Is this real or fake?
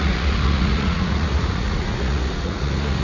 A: fake